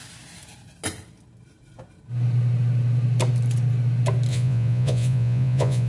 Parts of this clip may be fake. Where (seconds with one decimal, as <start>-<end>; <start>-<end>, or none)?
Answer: 4.3-5.9